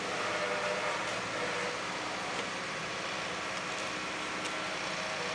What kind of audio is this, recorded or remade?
recorded